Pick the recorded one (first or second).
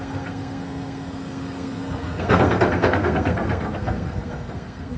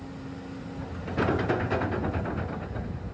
second